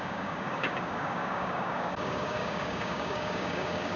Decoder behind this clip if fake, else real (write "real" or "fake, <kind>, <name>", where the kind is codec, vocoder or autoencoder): fake, codec, DAC